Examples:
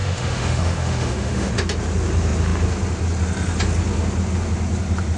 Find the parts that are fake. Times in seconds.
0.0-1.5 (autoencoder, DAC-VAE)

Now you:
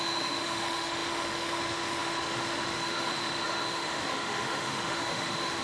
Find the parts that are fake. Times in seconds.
0.0-5.6 (autoencoder, DAC-VAE)